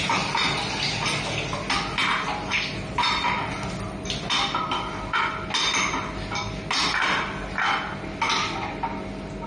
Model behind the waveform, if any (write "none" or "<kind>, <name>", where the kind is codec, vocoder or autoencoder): none